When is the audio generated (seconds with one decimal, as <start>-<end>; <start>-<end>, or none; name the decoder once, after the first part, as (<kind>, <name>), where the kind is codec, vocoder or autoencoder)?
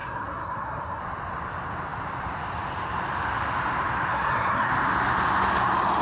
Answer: 0.0-1.0 (codec, SNAC); 4.1-4.7